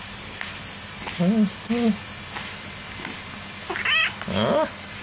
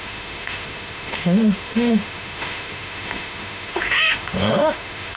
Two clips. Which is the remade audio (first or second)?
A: second